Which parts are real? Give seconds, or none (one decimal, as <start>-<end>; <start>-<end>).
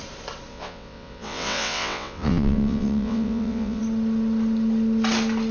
0.0-0.5; 3.8-5.5